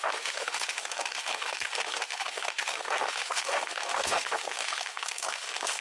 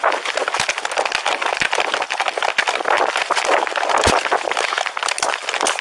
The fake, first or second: first